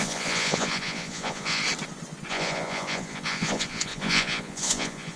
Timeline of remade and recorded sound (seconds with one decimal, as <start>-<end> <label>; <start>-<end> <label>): 0.0-1.6 remade; 1.6-2.3 recorded; 2.3-5.2 remade